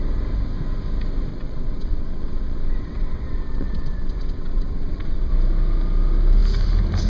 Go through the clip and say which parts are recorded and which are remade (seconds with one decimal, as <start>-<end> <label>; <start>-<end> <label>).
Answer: 0.0-1.3 recorded; 1.3-5.3 remade; 5.3-7.1 recorded